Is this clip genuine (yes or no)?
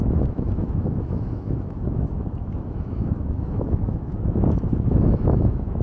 no